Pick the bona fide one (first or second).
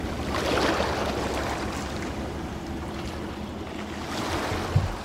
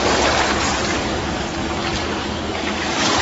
first